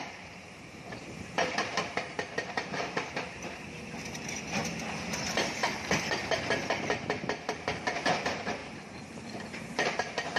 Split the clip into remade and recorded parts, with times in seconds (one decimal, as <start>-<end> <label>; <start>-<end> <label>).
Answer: 0.0-4.6 remade; 4.6-7.5 recorded; 7.5-10.4 remade